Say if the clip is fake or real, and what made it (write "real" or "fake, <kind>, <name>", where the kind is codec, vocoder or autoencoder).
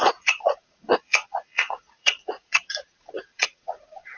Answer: fake, vocoder, Vocos